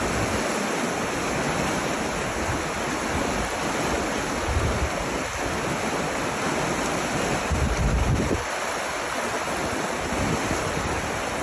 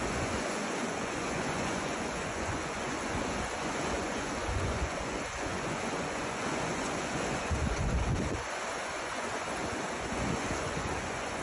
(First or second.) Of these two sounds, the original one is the first